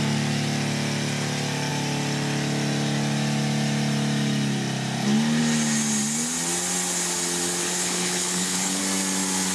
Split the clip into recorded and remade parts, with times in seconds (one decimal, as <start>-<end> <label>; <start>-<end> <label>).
0.0-7.6 recorded; 7.6-8.8 remade; 8.8-9.5 recorded